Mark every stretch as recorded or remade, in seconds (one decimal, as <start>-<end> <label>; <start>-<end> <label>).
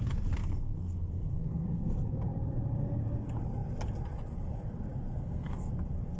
0.0-0.4 recorded; 0.4-1.8 remade; 1.8-5.1 recorded; 5.1-5.7 remade; 5.7-6.2 recorded